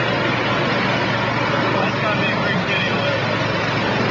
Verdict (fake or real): real